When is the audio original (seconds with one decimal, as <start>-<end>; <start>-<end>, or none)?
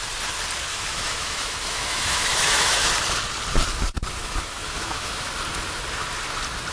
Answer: 0.0-0.7; 2.9-4.2; 5.3-6.7